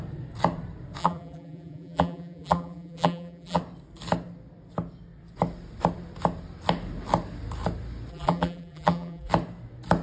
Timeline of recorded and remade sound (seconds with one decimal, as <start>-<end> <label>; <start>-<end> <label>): 0.0-1.0 recorded; 1.0-3.6 remade; 3.6-8.1 recorded; 8.1-9.3 remade; 9.3-10.0 recorded